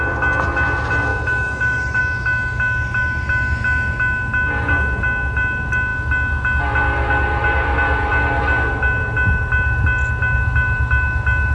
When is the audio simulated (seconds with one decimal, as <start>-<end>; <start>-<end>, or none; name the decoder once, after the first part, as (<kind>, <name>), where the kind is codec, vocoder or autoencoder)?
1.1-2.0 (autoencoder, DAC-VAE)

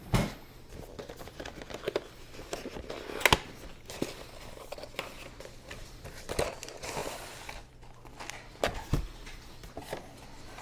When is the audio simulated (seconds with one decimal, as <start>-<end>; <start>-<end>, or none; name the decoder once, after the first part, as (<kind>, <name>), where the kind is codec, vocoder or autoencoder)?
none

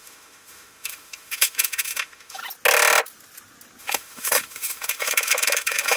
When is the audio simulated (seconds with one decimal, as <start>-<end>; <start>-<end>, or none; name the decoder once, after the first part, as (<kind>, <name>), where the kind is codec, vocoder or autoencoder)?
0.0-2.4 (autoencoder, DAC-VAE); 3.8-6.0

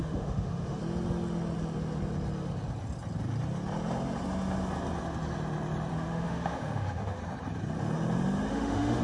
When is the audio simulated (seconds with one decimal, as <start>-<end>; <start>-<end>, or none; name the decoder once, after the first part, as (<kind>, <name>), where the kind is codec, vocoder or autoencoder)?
0.0-0.8 (autoencoder, DAC-VAE); 5.9-7.2; 8.5-9.0